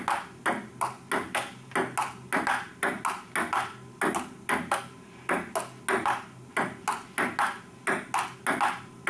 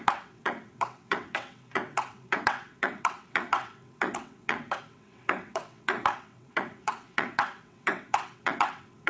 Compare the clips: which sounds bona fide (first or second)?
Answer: first